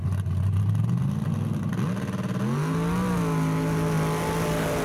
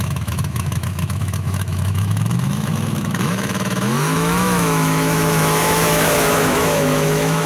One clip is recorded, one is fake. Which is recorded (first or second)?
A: first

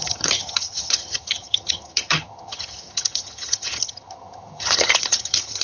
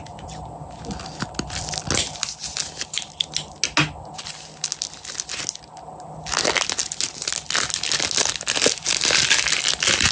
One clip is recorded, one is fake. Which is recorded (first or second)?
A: second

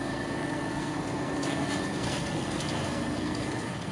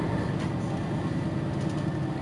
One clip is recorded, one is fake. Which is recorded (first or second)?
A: second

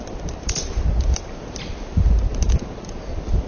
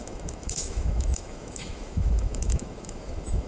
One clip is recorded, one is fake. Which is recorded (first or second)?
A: first